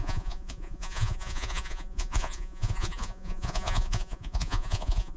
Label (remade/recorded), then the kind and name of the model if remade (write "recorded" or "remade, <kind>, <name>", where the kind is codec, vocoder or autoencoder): remade, vocoder, Vocos